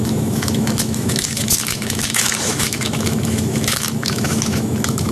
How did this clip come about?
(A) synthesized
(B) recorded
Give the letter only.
A